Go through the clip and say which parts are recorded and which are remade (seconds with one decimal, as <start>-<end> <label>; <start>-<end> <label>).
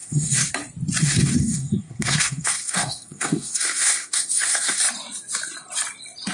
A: 0.0-0.5 remade; 0.5-1.0 recorded; 1.0-4.8 remade; 4.8-6.3 recorded